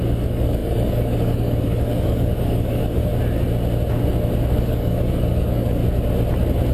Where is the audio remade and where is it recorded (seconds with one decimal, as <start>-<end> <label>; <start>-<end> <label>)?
0.0-3.1 remade; 3.1-4.5 recorded; 4.5-5.8 remade; 5.8-6.7 recorded